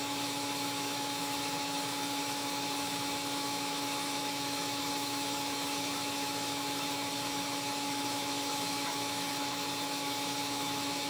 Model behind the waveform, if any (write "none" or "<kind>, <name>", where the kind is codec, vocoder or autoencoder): autoencoder, DAC-VAE